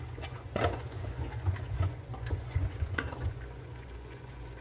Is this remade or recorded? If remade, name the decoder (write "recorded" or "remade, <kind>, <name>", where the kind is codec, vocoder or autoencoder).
remade, vocoder, Vocos